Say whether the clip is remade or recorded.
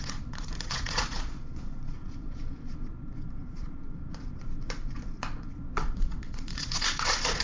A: remade